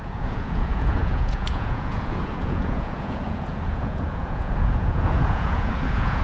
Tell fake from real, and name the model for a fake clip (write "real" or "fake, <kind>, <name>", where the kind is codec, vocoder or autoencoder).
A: fake, vocoder, Vocos